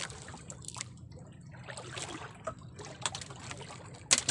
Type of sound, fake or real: real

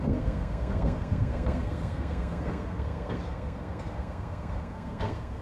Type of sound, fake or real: fake